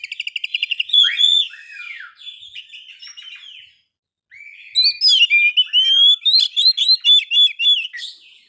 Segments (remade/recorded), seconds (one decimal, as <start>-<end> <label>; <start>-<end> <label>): 0.0-0.5 recorded; 0.5-2.6 remade; 2.6-8.5 recorded